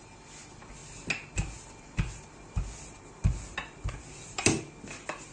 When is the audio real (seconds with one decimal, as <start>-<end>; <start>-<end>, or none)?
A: 0.0-5.3